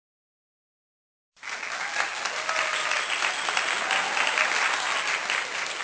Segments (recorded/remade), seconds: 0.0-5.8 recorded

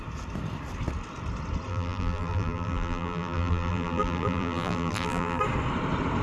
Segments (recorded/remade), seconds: 0.0-1.7 recorded; 1.7-5.4 remade; 5.4-6.2 recorded

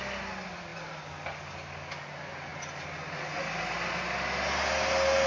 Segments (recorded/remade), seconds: 0.0-5.3 recorded